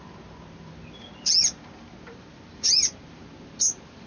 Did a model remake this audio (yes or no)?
no